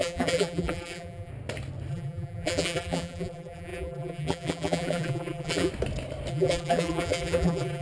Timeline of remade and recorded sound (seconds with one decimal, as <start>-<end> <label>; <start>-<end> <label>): 0.0-1.3 remade; 1.3-1.9 recorded; 1.9-5.7 remade; 5.7-6.3 recorded; 6.3-7.8 remade